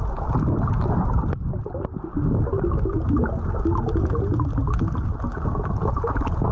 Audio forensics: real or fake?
real